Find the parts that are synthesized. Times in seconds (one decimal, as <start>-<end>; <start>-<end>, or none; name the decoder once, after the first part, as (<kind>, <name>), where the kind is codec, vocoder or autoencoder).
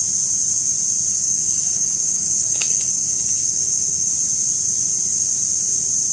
1.1-4.1 (codec, DAC)